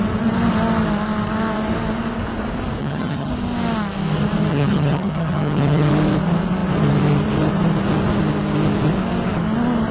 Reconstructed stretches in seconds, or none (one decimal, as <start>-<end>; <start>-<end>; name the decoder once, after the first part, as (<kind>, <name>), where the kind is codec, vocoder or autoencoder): 2.8-3.3 (vocoder, HiFi-GAN); 4.5-5.9